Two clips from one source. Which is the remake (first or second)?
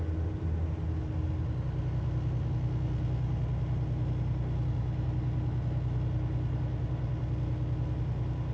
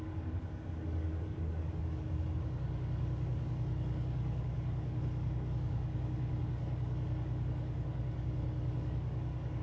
second